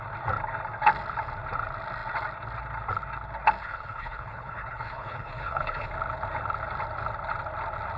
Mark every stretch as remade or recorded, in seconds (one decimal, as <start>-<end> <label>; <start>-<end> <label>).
0.0-3.6 recorded; 3.6-5.9 remade; 5.9-8.0 recorded